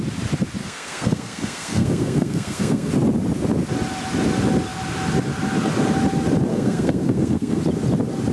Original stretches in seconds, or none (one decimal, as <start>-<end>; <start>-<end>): 0.0-0.6; 2.9-6.5; 7.6-8.3